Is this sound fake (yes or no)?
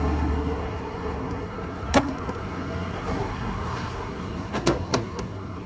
yes